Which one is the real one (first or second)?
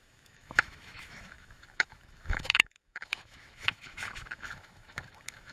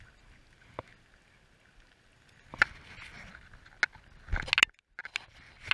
second